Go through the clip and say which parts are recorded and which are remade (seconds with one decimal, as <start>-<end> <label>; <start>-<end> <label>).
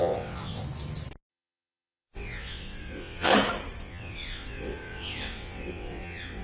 0.0-0.6 remade; 0.6-1.3 recorded; 1.3-3.3 remade; 3.3-3.8 recorded; 3.8-6.4 remade